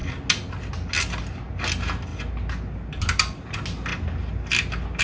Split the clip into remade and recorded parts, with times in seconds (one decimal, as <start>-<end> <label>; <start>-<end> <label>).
0.0-5.0 recorded